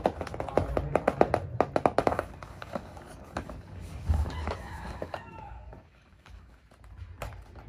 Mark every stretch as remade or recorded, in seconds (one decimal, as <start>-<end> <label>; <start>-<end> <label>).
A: 0.0-2.0 recorded; 2.0-6.6 remade; 6.6-7.7 recorded